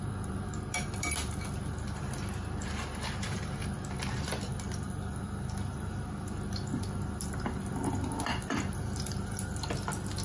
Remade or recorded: recorded